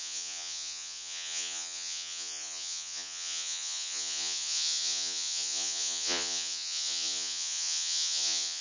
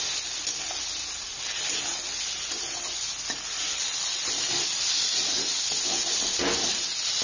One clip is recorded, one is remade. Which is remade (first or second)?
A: first